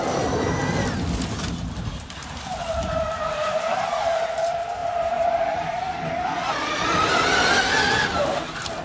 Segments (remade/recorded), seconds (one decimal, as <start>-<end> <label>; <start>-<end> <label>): 0.0-4.8 recorded; 4.8-7.9 remade; 7.9-8.8 recorded